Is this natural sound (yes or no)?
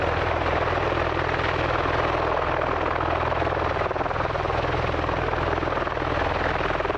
yes